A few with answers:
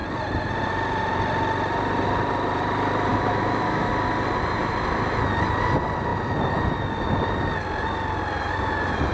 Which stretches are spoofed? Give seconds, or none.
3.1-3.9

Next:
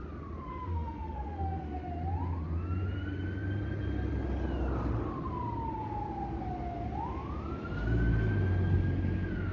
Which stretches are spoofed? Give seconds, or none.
0.5-1.9

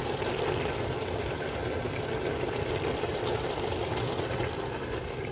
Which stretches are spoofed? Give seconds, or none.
none

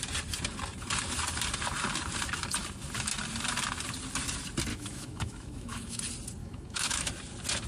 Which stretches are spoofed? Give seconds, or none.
4.7-6.0; 6.4-7.1